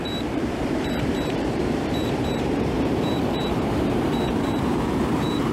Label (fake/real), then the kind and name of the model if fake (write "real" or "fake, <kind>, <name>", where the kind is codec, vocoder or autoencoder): fake, vocoder, BigVGAN v2